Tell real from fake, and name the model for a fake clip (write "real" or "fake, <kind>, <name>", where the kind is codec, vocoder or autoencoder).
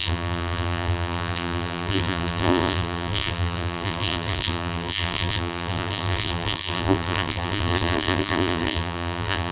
fake, vocoder, BigVGAN v2